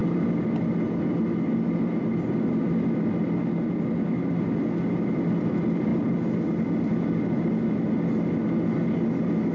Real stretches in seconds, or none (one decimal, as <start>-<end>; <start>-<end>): 0.0-9.5